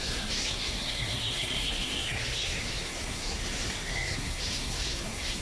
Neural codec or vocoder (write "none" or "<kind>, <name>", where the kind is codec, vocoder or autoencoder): codec, SNAC